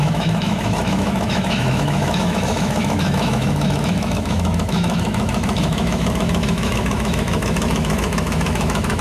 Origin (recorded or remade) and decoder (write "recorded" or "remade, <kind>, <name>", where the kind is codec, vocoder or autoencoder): remade, autoencoder, DAC-VAE